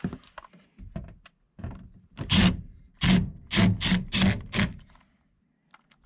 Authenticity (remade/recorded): recorded